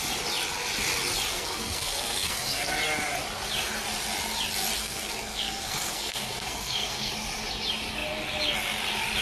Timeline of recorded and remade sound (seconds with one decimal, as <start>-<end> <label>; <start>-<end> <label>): 0.0-1.3 recorded; 1.3-2.8 remade; 2.8-4.8 recorded; 4.8-7.1 remade; 7.1-9.2 recorded